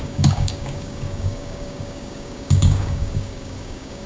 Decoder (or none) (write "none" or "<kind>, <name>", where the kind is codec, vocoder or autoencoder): codec, DAC